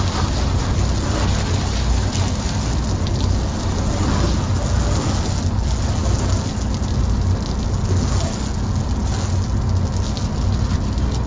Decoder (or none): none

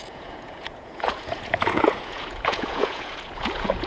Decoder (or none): vocoder, Vocos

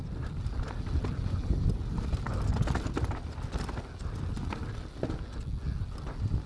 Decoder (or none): none